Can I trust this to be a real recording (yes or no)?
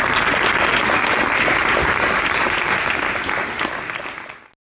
yes